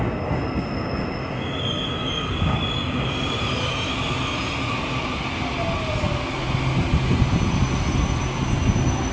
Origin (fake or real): real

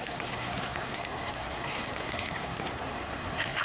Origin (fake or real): fake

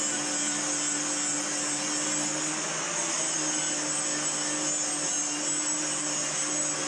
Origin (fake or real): real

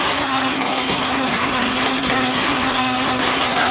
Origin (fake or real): fake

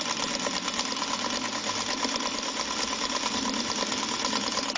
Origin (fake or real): real